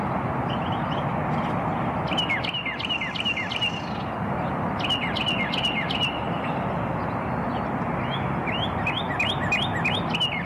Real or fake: real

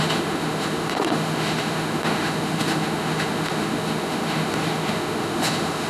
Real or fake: fake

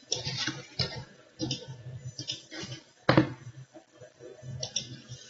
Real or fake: real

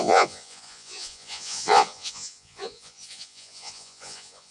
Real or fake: fake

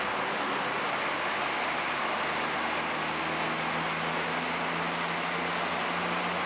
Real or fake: real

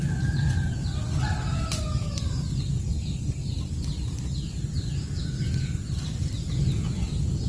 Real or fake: real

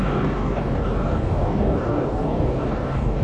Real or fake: fake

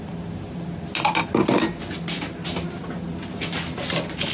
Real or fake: real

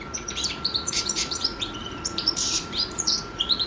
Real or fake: fake